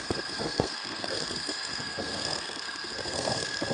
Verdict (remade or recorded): remade